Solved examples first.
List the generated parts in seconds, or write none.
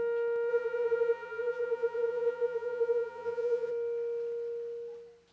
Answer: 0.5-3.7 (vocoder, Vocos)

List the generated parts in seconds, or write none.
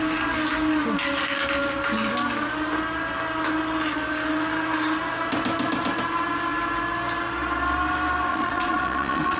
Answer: 8.3-9.4 (vocoder, Vocos)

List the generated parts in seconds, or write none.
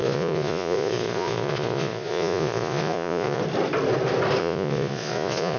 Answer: 0.0-3.4 (vocoder, Vocos); 4.4-5.6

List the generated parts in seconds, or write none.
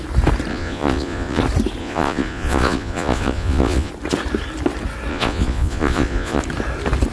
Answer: 0.5-1.4 (vocoder, Vocos); 1.8-3.9; 5.1-6.4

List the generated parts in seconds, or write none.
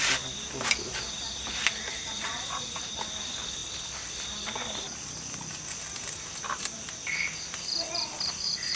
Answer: 2.0-2.9 (vocoder, Vocos)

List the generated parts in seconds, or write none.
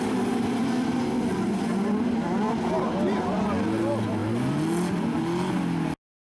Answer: none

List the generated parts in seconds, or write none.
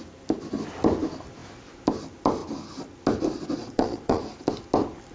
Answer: 3.6-4.2 (vocoder, Vocos)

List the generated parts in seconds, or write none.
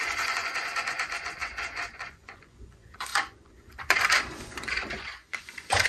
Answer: 0.0-5.9 (vocoder, Vocos)